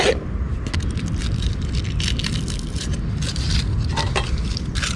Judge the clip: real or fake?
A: real